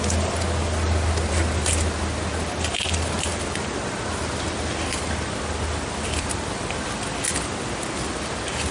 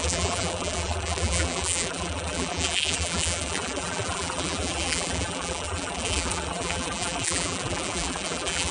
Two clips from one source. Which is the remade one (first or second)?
second